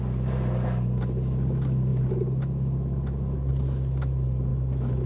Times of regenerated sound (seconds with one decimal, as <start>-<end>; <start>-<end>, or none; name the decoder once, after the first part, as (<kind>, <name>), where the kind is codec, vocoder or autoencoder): 4.5-5.1 (autoencoder, DAC-VAE)